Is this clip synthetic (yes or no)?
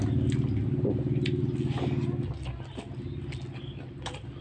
no